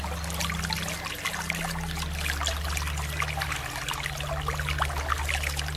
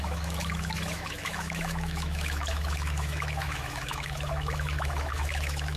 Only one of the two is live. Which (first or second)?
first